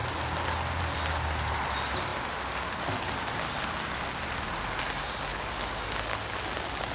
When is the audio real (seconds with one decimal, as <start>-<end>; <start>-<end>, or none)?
0.0-5.3; 6.3-6.9